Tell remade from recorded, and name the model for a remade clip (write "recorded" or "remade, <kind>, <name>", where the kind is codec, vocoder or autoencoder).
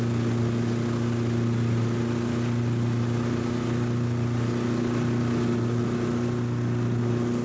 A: recorded